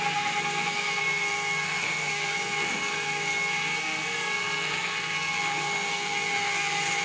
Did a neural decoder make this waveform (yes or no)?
yes